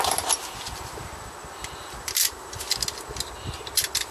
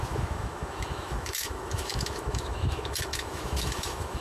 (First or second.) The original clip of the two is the first